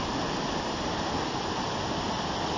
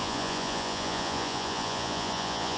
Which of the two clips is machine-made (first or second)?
second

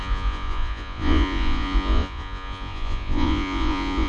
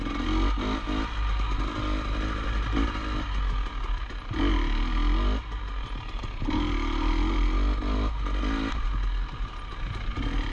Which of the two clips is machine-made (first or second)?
first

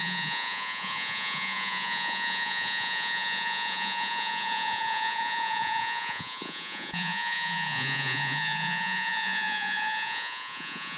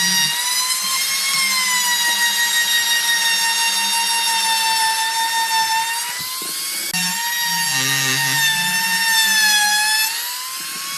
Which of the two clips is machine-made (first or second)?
first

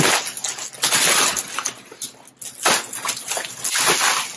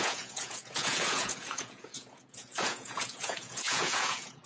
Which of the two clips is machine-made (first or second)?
second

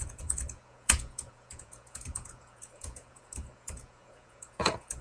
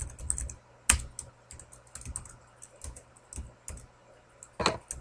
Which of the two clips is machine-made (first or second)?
first